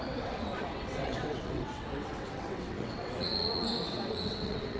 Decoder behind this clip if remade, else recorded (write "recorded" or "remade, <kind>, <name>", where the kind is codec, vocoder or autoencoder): remade, vocoder, WaveNeXt